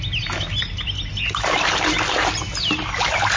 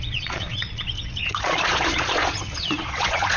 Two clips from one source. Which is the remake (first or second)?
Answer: second